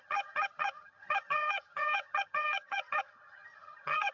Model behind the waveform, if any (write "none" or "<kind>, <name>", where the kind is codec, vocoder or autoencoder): vocoder, HiFi-GAN